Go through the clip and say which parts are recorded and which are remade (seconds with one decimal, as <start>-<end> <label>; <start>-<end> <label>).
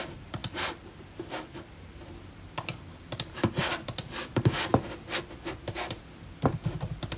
0.0-7.2 recorded